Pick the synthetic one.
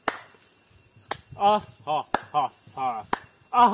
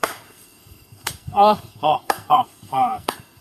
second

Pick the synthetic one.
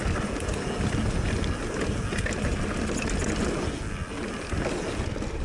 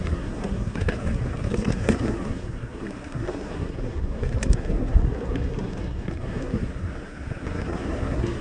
second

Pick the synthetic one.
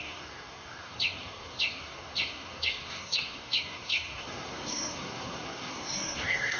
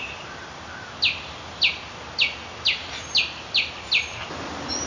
first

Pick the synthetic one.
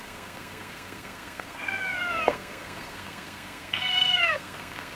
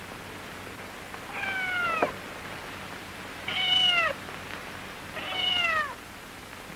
first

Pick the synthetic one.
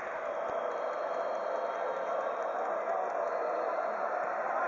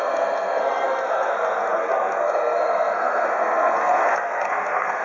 second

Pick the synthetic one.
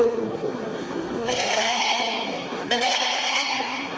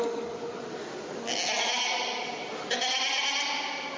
first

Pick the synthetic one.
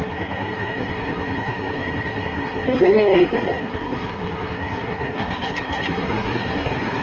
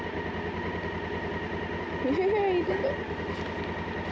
first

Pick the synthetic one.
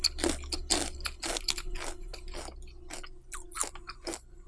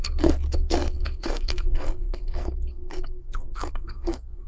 second